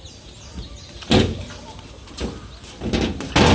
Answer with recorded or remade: recorded